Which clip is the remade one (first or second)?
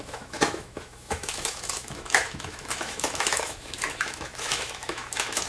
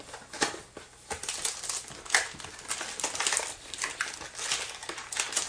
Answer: first